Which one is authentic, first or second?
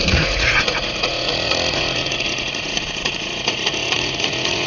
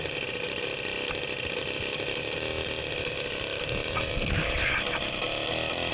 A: second